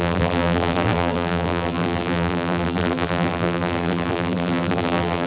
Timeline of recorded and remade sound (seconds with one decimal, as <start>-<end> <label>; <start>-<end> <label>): 0.0-5.3 remade